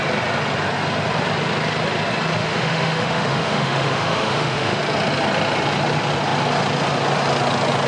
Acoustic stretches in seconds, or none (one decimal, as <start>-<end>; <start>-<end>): 0.0-2.4; 4.8-7.9